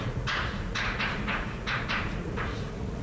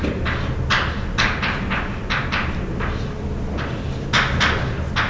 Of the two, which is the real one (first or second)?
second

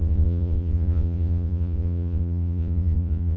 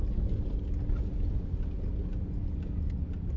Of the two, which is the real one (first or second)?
second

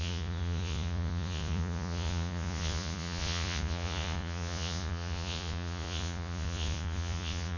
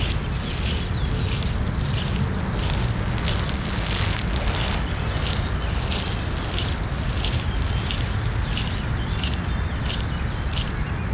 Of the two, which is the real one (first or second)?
second